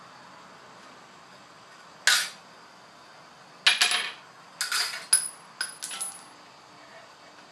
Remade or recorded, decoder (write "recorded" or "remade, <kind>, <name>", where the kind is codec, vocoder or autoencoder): recorded